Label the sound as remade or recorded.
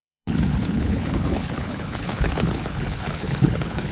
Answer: remade